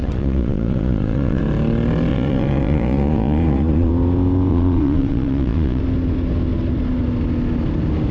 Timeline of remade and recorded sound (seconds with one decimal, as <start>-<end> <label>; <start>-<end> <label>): 0.0-1.4 remade; 1.4-2.1 recorded; 2.1-3.9 remade; 3.9-4.5 recorded; 4.5-5.8 remade; 5.8-8.1 recorded